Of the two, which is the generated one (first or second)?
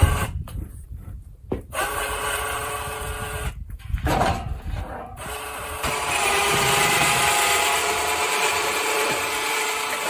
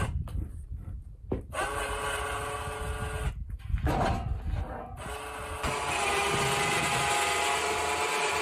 first